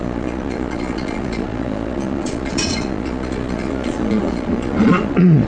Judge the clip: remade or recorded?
remade